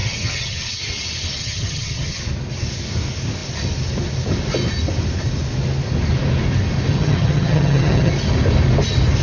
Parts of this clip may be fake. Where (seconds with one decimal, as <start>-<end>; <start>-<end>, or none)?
0.0-0.8; 1.4-2.2; 6.9-8.1